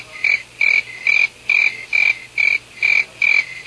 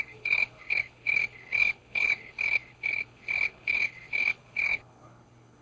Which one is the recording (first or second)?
first